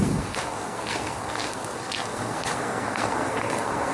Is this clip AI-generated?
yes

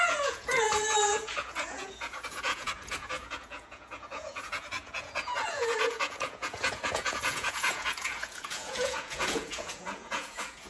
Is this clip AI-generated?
yes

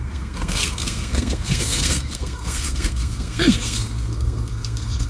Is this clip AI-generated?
yes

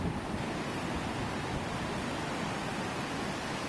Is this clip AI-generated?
no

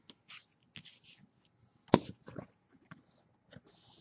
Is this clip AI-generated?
no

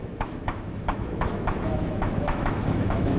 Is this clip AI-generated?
yes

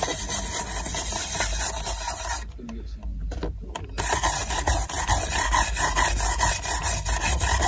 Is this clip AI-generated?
no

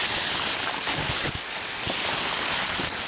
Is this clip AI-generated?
no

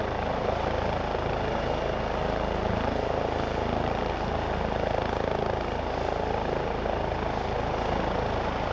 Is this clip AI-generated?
no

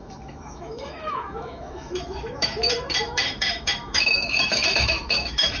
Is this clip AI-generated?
yes